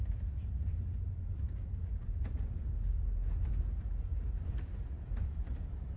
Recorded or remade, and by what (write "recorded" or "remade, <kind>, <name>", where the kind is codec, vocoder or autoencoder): remade, vocoder, BigVGAN v2